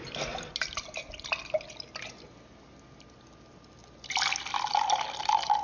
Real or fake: real